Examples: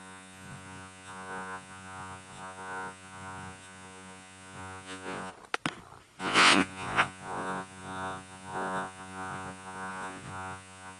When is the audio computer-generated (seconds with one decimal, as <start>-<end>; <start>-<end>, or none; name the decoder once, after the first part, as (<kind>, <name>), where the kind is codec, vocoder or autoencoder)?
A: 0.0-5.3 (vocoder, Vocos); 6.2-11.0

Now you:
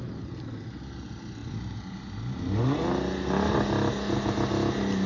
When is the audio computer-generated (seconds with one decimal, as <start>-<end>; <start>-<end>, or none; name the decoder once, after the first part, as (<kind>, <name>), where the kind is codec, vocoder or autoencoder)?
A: none

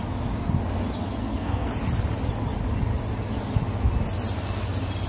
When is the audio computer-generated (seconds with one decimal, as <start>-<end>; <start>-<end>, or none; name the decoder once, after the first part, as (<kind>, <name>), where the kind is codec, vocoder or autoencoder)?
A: 1.2-1.7 (codec, SNAC)